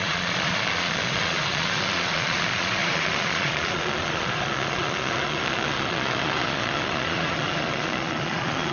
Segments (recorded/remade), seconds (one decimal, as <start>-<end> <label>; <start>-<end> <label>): 0.0-8.7 remade